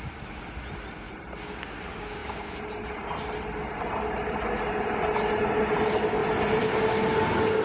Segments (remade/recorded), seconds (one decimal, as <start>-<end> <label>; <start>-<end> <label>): 0.0-7.6 recorded